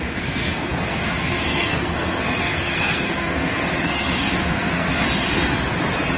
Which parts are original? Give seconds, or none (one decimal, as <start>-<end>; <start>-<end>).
4.9-6.2

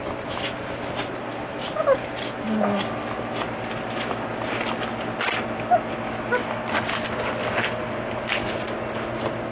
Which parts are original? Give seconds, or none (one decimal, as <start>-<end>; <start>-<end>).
0.0-9.5

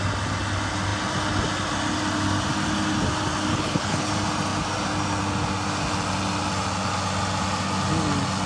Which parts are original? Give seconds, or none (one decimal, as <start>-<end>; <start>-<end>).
0.0-3.5; 4.1-8.5

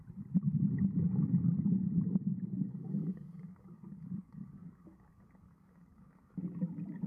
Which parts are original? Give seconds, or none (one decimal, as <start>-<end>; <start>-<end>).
0.0-3.0; 6.4-7.1

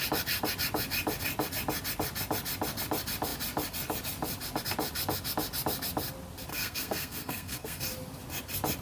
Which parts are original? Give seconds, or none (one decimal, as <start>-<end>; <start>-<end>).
0.0-6.5; 7.8-8.8

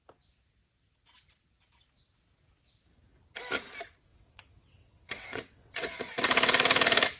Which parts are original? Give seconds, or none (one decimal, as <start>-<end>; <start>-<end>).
0.0-4.1; 6.0-7.2

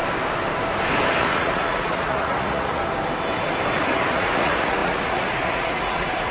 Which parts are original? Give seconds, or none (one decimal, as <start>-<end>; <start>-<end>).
0.0-1.2; 2.8-3.8